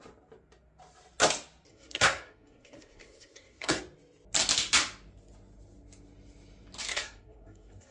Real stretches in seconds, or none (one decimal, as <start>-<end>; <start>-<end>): 0.0-1.7; 3.8-6.9